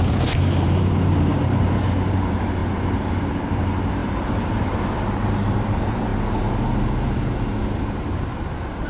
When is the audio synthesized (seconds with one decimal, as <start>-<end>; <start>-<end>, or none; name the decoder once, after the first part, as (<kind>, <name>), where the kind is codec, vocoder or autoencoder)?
0.0-6.1 (vocoder, BigVGAN v2); 7.0-8.9

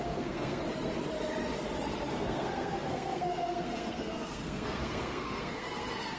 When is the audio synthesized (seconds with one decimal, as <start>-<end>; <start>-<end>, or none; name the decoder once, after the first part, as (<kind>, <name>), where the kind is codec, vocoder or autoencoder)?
0.0-0.6 (codec, SNAC); 2.1-6.2

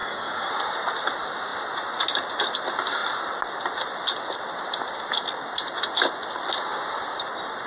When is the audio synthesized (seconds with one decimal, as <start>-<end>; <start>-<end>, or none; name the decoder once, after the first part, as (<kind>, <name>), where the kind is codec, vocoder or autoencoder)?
0.0-0.5 (codec, DAC)

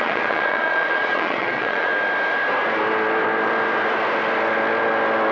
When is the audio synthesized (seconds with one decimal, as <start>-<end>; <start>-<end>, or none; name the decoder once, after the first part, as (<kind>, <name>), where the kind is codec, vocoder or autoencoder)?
0.0-1.9 (vocoder, Vocos)

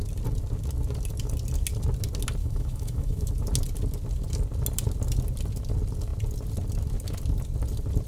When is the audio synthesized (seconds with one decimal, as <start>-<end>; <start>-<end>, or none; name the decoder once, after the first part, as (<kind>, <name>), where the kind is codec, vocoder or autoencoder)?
2.4-3.3 (autoencoder, DAC-VAE)